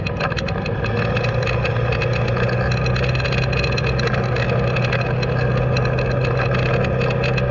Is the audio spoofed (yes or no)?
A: no